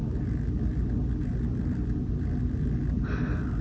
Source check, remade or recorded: recorded